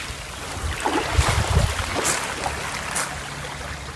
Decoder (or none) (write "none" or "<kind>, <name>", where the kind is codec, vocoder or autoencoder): none